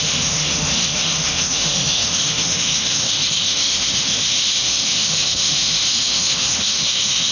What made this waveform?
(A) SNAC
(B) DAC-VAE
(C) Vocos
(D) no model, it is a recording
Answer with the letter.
B